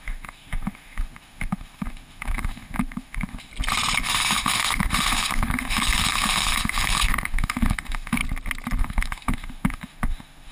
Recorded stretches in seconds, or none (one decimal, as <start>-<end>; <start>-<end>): 3.5-4.0; 8.2-8.8